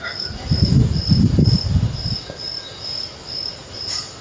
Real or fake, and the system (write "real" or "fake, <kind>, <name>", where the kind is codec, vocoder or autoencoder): real